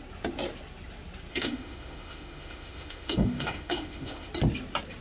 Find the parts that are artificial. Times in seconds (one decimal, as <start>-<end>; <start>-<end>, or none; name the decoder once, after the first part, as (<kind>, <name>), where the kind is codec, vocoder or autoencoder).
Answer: 1.3-4.3 (autoencoder, DAC-VAE)

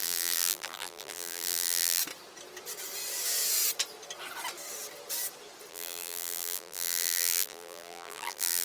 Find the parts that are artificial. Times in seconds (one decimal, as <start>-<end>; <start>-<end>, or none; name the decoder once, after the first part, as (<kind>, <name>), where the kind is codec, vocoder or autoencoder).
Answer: 0.0-2.0 (vocoder, BigVGAN v2); 5.7-8.6